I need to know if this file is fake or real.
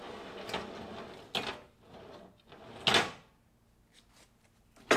real